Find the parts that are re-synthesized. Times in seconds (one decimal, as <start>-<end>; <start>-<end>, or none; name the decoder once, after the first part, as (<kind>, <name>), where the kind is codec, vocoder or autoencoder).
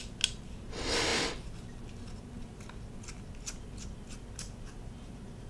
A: none